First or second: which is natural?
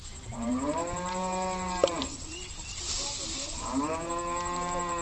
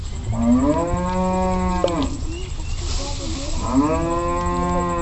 second